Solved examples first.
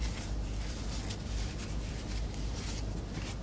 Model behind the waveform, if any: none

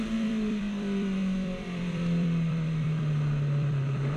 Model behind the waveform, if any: vocoder, BigVGAN v2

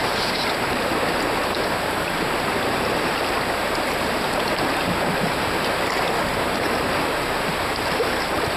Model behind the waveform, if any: none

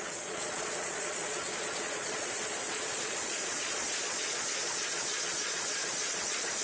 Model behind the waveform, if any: vocoder, Vocos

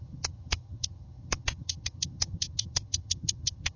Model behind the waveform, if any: vocoder, HiFi-GAN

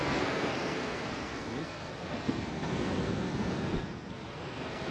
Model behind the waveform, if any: codec, SNAC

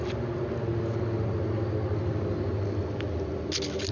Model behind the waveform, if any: none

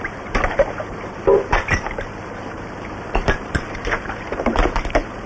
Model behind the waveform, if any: vocoder, BigVGAN v2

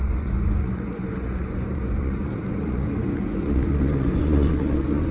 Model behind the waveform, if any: vocoder, Vocos